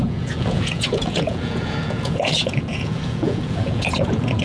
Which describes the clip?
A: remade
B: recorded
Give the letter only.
A